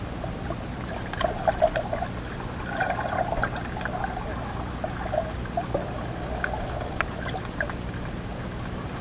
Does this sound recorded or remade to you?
recorded